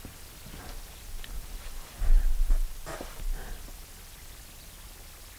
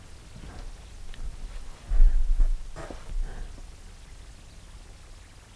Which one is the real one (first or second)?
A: second